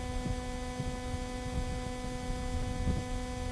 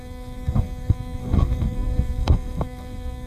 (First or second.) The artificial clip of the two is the second